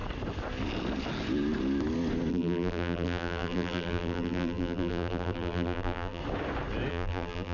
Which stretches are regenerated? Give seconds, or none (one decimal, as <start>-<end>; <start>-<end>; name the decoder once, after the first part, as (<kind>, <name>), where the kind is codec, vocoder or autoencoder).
2.3-6.2 (vocoder, BigVGAN v2); 6.9-7.5